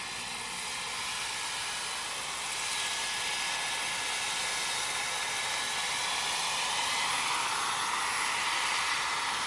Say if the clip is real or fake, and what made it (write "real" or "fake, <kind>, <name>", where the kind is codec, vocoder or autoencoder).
real